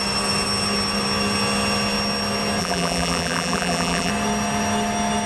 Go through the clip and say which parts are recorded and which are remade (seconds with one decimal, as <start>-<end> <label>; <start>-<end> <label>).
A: 0.0-2.6 recorded; 2.6-4.1 remade; 4.1-5.3 recorded